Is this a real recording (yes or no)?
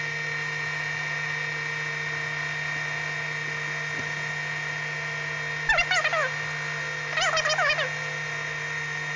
yes